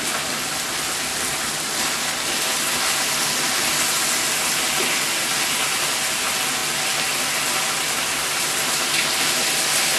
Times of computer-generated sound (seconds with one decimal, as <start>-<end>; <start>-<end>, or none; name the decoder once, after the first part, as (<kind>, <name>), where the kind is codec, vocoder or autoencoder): none